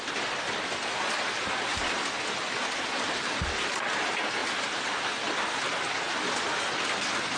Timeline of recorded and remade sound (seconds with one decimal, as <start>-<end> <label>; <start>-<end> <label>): 0.0-7.4 recorded